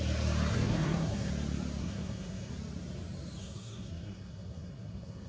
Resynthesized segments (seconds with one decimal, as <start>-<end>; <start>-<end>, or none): 0.5-1.3; 1.8-2.5; 3.4-5.3